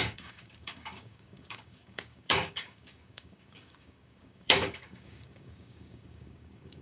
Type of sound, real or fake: fake